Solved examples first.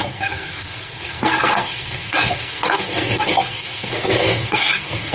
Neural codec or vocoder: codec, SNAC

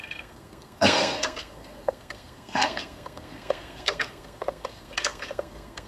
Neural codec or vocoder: codec, SNAC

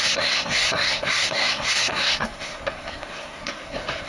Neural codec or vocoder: codec, SNAC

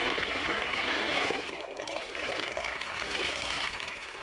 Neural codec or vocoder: codec, SNAC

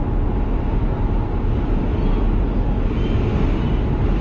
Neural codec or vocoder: none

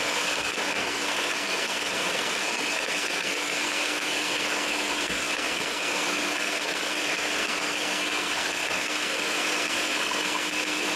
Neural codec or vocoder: codec, SNAC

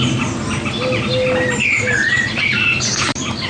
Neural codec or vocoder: none